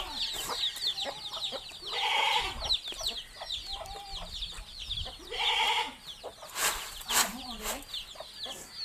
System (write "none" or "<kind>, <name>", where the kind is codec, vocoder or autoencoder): none